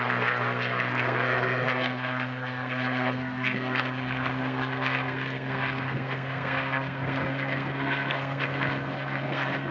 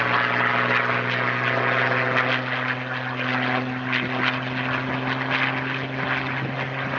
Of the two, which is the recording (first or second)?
second